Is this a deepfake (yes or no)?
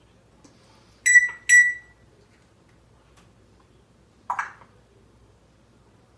no